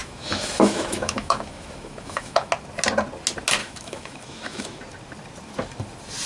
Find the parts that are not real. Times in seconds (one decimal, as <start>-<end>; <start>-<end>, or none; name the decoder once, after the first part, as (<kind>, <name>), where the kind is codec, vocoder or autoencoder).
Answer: 0.0-2.5 (autoencoder, DAC-VAE); 3.6-4.8